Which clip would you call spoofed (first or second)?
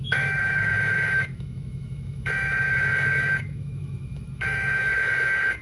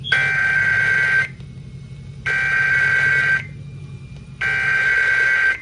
first